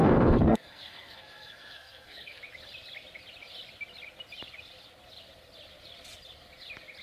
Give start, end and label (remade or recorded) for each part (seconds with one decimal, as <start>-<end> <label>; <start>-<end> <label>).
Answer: 0.0-2.4 remade; 2.4-7.0 recorded